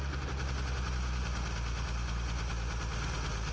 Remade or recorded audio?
recorded